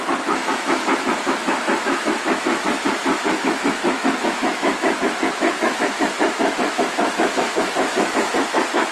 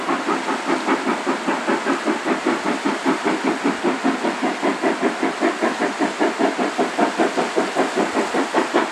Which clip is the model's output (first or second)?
first